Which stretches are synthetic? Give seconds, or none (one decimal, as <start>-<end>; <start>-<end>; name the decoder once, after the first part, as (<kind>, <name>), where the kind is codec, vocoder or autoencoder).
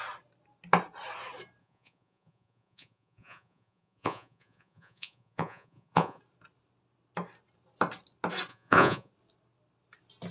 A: 1.6-6.2 (vocoder, Vocos); 8.5-9.1